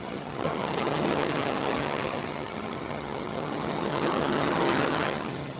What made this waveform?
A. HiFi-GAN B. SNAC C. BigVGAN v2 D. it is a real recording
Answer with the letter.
A